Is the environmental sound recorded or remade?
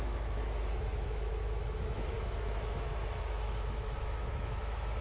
remade